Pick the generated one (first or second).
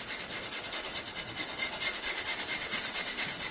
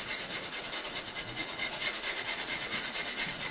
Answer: second